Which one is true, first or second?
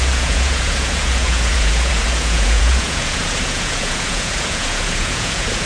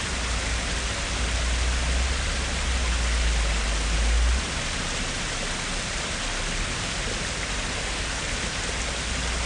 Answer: second